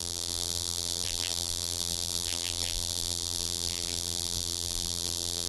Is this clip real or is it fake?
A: fake